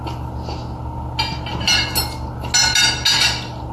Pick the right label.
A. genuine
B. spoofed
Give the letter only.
A